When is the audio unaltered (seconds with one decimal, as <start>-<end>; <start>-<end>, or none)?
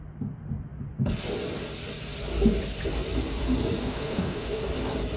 0.0-3.8; 4.6-5.2